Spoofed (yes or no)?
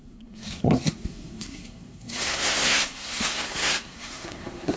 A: yes